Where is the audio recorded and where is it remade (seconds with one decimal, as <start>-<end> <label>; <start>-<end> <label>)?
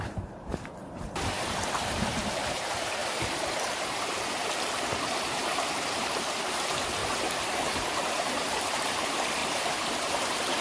0.0-4.4 remade; 4.4-5.9 recorded; 5.9-10.6 remade